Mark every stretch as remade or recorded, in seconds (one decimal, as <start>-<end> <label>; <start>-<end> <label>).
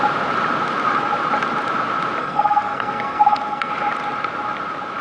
0.0-2.2 recorded; 2.2-3.7 remade; 3.7-5.0 recorded